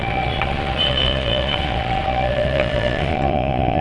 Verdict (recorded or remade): remade